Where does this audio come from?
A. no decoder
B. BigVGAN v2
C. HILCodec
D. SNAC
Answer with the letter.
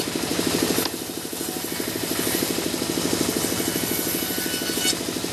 A